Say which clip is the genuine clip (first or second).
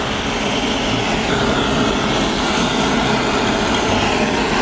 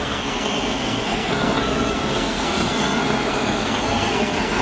first